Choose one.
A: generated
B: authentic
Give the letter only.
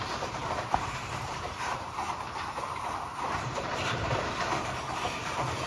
A